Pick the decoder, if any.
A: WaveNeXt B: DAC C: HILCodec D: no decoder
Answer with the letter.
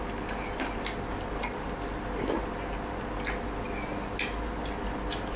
D